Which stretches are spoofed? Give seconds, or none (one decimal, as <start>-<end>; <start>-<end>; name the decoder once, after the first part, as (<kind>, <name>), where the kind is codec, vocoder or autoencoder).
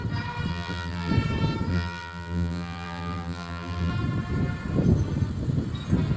0.5-1.1 (vocoder, BigVGAN v2); 1.7-3.9